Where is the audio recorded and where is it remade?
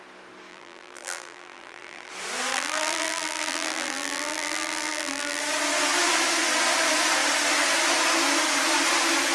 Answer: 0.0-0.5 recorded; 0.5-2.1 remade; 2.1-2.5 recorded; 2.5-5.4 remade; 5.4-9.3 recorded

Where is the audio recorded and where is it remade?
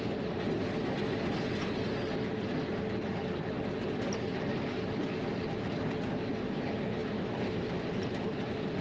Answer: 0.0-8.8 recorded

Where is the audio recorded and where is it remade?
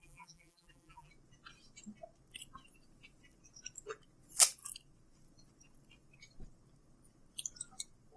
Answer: 0.0-1.1 remade; 1.1-8.2 recorded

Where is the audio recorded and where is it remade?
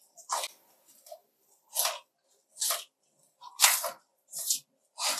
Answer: 0.0-4.1 recorded; 4.1-4.7 remade; 4.7-5.2 recorded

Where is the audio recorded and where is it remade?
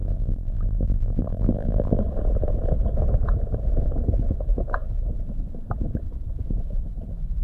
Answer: 0.0-2.0 remade; 2.0-7.4 recorded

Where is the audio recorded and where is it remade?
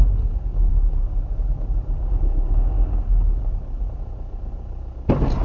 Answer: 0.0-5.4 recorded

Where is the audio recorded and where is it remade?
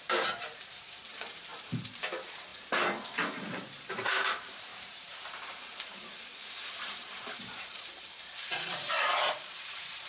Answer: 0.0-10.1 remade